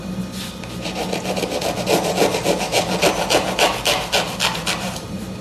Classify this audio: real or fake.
real